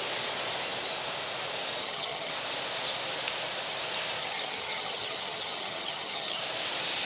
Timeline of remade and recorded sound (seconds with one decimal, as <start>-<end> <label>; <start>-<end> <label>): 0.0-1.8 recorded; 1.8-2.3 remade; 2.3-4.2 recorded; 4.2-6.4 remade; 6.4-7.1 recorded